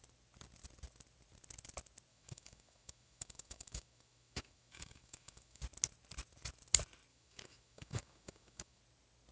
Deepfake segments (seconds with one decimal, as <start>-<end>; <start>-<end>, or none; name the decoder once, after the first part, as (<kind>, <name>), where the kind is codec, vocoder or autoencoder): 2.1-5.6 (autoencoder, DAC-VAE); 7.1-8.8